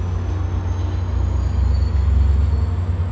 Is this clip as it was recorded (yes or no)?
yes